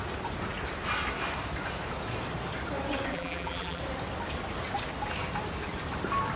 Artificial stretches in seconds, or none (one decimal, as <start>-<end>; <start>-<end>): 3.1-3.8